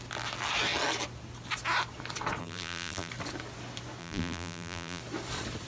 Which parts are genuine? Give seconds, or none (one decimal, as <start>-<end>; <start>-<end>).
0.0-2.4; 3.1-4.0; 5.0-5.7

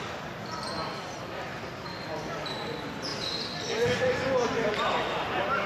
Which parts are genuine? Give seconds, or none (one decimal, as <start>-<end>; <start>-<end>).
0.0-5.7